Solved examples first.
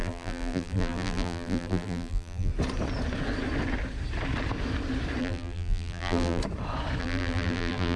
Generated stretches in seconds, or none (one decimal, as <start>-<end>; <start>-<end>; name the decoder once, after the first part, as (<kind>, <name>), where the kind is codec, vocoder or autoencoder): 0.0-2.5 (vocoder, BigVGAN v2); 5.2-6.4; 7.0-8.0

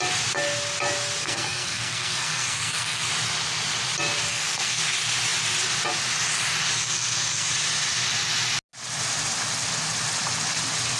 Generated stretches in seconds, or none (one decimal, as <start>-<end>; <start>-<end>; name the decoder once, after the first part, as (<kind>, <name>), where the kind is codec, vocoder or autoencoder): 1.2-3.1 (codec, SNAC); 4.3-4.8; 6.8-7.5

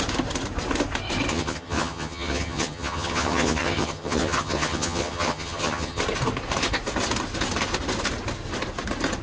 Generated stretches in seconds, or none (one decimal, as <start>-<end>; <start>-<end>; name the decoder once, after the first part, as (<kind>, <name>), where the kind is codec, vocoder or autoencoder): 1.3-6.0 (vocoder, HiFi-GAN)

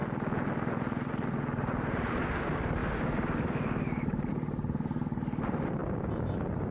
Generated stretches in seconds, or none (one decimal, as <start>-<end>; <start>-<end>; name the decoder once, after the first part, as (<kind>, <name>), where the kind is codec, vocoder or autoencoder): none

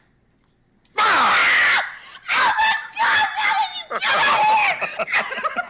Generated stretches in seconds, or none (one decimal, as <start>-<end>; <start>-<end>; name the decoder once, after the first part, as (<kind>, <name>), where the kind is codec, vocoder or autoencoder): none

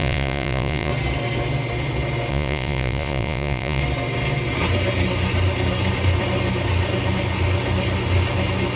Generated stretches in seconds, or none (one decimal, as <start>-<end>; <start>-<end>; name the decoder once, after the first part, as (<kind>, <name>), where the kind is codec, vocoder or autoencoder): 0.0-0.9 (vocoder, Vocos); 2.3-3.8

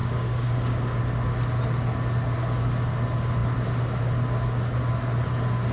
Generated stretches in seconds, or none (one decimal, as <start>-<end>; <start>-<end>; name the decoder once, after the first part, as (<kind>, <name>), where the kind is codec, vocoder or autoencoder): 0.0-1.0 (codec, DAC)